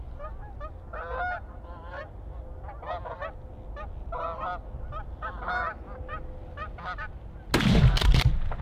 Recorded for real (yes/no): yes